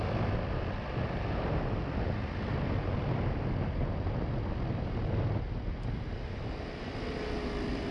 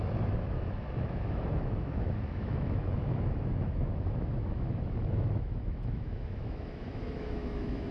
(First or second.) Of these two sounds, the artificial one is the second